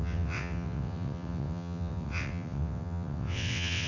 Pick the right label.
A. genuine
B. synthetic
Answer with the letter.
B